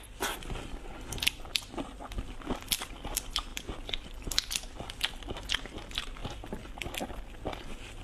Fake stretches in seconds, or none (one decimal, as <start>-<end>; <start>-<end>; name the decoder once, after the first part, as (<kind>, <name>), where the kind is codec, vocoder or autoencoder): none